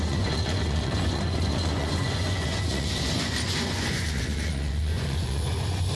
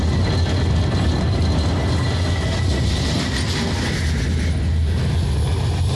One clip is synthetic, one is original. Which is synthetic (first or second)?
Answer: first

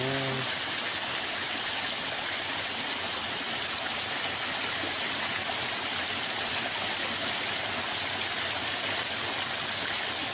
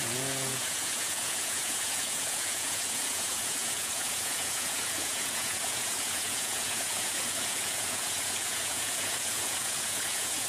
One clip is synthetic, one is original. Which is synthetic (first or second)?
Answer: second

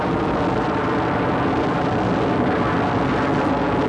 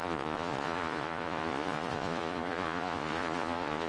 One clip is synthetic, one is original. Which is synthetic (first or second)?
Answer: second